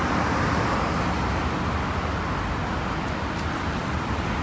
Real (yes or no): yes